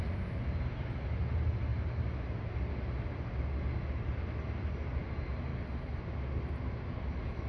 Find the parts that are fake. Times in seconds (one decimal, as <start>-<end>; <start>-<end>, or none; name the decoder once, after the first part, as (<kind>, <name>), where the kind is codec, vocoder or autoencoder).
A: 5.5-6.0 (vocoder, BigVGAN v2)